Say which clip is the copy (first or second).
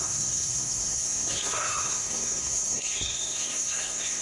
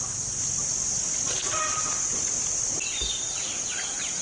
first